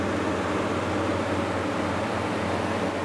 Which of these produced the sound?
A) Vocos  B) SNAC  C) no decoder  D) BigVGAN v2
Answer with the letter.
C